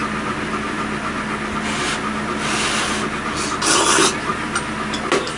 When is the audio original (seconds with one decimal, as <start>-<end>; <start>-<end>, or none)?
0.0-5.4